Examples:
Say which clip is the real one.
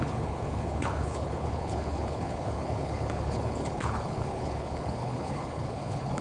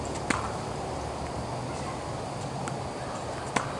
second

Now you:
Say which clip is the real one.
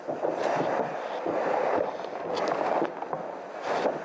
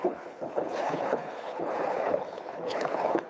first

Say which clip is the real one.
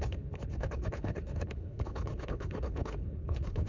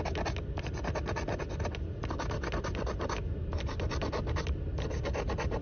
second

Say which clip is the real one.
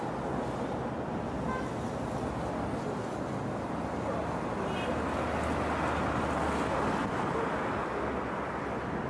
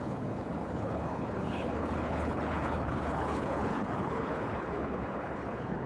first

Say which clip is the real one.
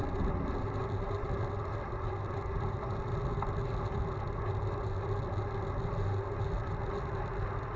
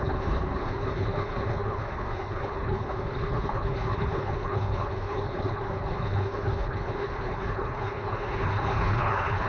first